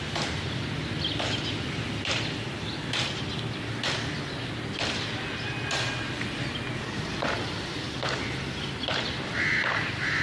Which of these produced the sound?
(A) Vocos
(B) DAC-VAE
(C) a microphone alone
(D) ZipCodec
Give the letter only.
C